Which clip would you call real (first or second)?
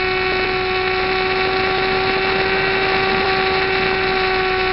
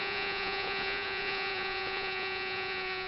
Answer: first